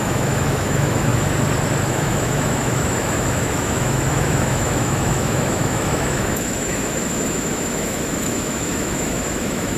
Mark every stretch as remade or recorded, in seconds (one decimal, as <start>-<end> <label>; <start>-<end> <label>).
0.0-1.1 remade; 1.1-1.9 recorded; 1.9-9.8 remade